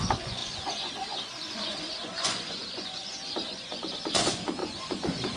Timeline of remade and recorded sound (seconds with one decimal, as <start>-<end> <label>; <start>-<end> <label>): 0.0-5.4 remade